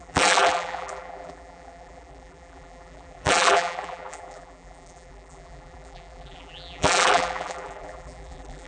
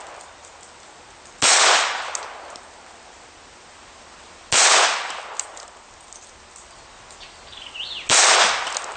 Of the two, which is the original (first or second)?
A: second